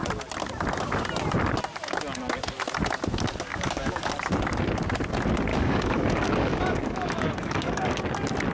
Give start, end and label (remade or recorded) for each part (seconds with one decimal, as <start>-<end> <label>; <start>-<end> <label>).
0.0-3.5 recorded; 3.5-4.1 remade; 4.1-5.5 recorded; 5.5-8.0 remade; 8.0-8.5 recorded